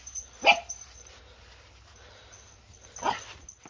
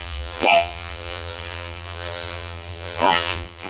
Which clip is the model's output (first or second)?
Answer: second